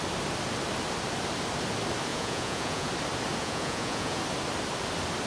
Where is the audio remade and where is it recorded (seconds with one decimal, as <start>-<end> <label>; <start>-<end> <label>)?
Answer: 0.0-2.1 recorded; 2.1-2.9 remade; 2.9-3.4 recorded; 3.4-4.2 remade; 4.2-5.3 recorded